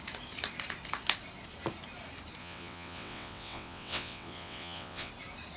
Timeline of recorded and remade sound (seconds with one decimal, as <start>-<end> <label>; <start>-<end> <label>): 0.0-2.4 recorded; 2.4-5.1 remade; 5.1-5.6 recorded